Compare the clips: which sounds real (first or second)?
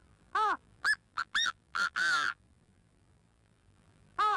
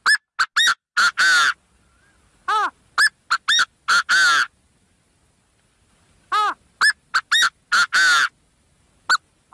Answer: second